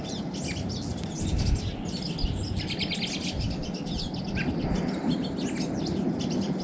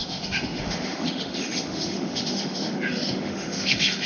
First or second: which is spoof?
second